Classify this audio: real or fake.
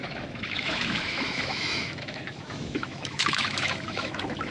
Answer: fake